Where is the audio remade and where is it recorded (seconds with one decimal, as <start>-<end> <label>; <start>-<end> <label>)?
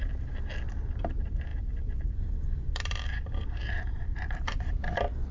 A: 0.0-1.5 recorded; 1.5-4.7 remade; 4.7-5.3 recorded